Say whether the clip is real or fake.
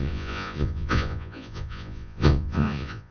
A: fake